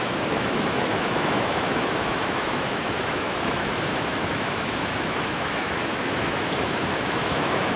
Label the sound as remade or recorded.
remade